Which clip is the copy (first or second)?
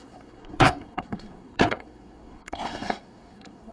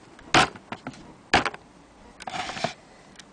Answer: first